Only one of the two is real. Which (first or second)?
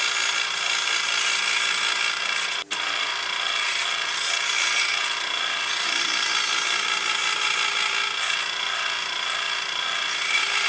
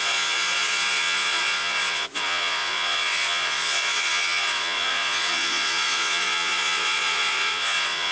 first